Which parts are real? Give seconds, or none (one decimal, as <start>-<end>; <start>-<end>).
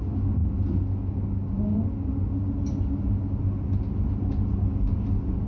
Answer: 0.0-5.5